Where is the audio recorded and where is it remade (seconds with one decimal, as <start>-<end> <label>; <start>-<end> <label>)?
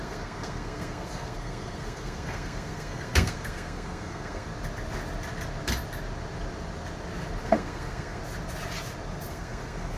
0.0-4.5 remade; 4.5-7.4 recorded; 7.4-8.2 remade; 8.2-9.3 recorded; 9.3-10.0 remade